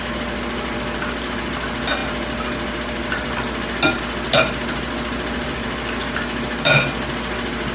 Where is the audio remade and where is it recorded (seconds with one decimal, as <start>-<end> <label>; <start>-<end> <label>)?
0.0-7.7 recorded

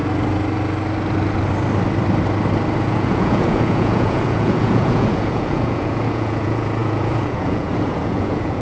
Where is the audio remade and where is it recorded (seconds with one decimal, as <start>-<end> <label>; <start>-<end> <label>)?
0.0-2.8 recorded; 2.8-8.6 remade

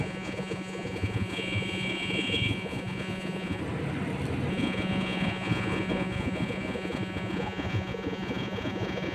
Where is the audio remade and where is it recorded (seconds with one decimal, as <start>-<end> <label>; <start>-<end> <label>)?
0.0-3.6 remade; 3.6-4.5 recorded; 4.5-9.1 remade